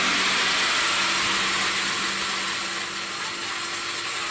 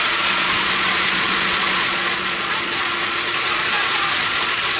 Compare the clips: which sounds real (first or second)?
first